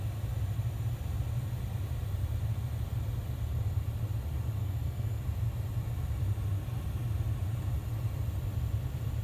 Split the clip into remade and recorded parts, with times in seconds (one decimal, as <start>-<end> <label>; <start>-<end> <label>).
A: 0.0-4.6 recorded; 4.6-5.2 remade; 5.2-9.2 recorded